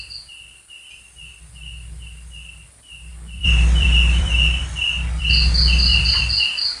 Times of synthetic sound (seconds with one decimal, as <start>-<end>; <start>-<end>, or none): 3.1-5.2; 5.9-6.8